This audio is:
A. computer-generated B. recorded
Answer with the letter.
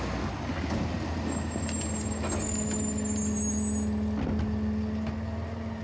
B